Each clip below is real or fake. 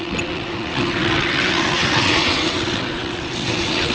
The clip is fake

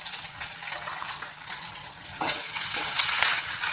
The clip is fake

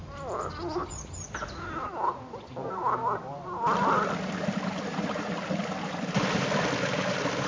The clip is real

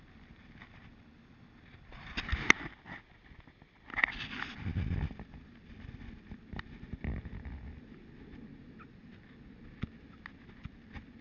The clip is real